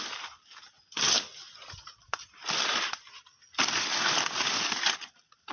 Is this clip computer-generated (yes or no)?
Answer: no